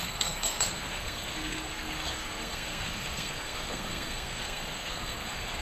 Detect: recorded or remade remade